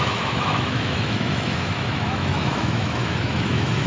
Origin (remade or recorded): remade